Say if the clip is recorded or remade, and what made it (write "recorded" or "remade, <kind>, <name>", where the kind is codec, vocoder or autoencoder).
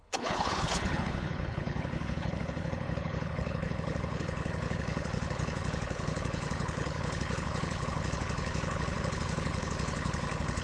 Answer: remade, codec, HILCodec